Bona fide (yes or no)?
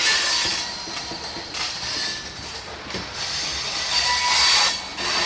yes